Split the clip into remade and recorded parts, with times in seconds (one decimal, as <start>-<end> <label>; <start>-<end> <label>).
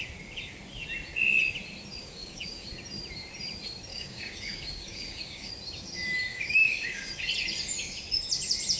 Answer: 0.0-2.0 recorded; 2.0-2.7 remade; 2.7-3.9 recorded; 3.9-5.5 remade; 5.5-6.3 recorded; 6.3-7.1 remade; 7.1-8.8 recorded